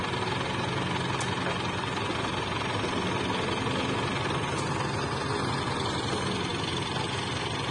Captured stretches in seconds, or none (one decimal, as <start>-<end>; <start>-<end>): 0.0-7.7